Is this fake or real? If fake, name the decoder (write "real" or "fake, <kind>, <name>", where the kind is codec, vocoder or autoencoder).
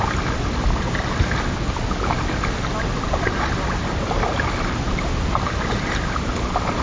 real